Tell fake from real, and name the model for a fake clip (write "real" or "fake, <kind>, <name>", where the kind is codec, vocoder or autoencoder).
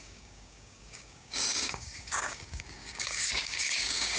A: fake, codec, DAC